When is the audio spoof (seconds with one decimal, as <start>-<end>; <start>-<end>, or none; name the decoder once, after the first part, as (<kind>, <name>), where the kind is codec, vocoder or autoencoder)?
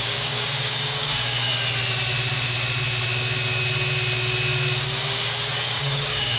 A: 0.0-1.5 (codec, DAC); 5.3-6.4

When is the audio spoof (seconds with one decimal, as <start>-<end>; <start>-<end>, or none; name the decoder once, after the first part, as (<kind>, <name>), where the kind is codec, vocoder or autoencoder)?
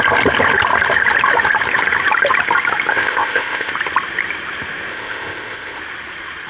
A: 2.9-3.7 (codec, ZipCodec); 4.9-5.8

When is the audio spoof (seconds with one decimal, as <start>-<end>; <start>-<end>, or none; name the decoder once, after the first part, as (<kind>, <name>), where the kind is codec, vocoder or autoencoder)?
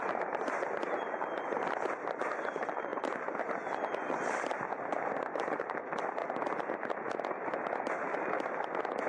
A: none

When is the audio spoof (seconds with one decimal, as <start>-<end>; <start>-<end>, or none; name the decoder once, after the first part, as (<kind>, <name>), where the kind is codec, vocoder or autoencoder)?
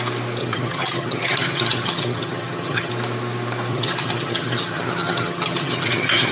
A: 0.4-2.9 (vocoder, HiFi-GAN); 3.7-6.3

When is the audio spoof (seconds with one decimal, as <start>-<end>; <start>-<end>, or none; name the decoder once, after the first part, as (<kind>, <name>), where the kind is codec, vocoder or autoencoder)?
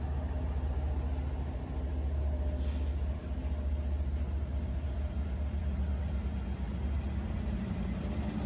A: none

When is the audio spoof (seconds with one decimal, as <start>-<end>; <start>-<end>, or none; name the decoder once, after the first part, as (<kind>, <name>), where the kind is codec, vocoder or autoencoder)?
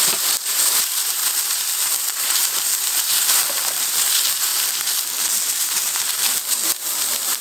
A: 0.0-4.5 (vocoder, BigVGAN v2); 5.5-7.4